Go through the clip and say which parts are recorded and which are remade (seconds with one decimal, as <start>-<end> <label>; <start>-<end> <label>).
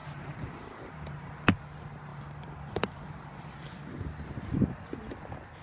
0.0-1.3 remade; 1.3-2.1 recorded; 2.1-4.1 remade; 4.1-5.6 recorded